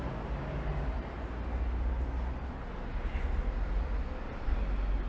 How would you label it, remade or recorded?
recorded